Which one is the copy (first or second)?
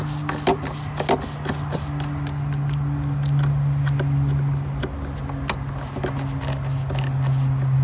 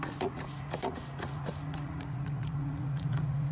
second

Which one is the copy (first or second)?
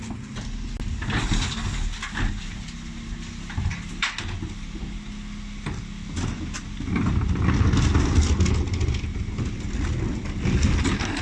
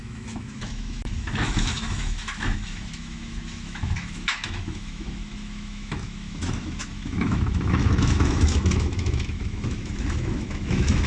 second